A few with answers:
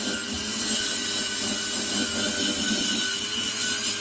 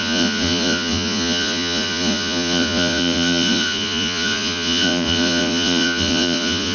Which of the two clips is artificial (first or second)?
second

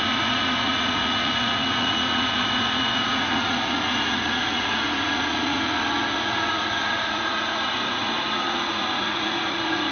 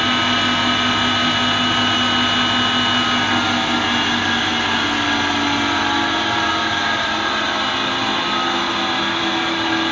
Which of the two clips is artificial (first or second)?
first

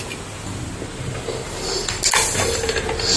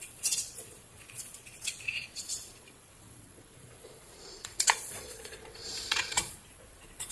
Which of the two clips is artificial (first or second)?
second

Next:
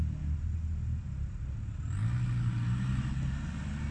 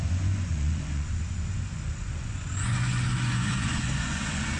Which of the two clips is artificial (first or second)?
second